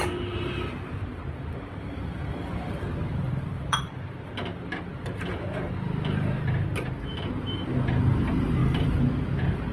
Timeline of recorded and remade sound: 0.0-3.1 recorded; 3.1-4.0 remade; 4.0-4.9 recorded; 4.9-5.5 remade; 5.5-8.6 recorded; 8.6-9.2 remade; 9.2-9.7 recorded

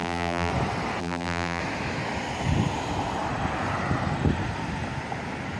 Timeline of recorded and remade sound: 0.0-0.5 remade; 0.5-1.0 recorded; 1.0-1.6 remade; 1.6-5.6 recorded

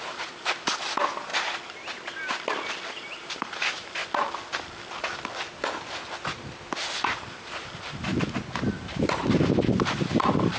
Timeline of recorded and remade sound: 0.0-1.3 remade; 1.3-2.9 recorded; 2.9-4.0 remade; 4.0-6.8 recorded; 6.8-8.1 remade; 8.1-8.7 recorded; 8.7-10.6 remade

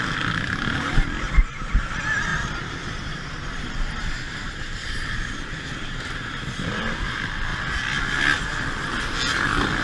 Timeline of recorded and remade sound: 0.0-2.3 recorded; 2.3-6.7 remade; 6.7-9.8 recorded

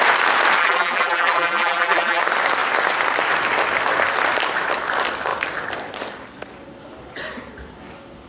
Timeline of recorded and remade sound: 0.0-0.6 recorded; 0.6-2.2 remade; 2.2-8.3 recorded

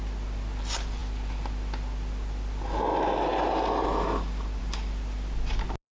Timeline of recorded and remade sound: 0.0-6.0 recorded

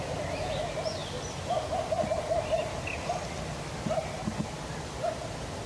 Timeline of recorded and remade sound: 0.0-1.0 recorded; 1.0-1.6 remade; 1.6-5.7 recorded